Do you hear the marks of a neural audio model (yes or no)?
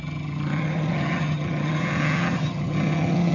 yes